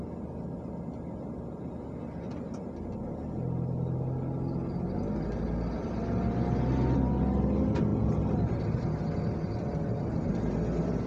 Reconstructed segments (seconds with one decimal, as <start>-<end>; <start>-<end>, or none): none